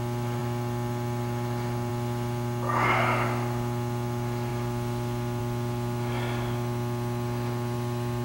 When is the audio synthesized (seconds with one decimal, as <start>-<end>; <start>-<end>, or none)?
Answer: none